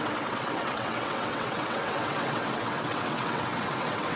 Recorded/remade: remade